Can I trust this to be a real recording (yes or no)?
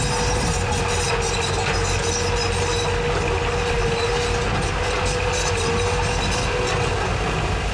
yes